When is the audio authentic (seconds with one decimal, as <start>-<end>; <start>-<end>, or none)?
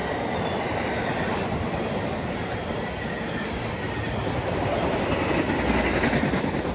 0.6-1.3; 5.3-6.7